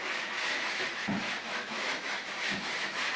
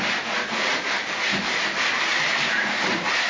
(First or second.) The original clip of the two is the second